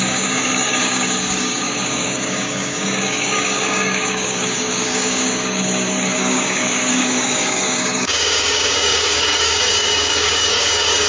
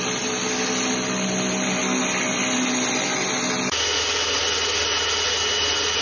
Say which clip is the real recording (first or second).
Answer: second